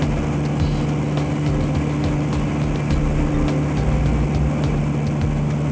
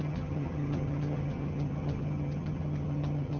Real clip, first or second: first